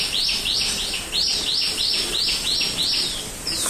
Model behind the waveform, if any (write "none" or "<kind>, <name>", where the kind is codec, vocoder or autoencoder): none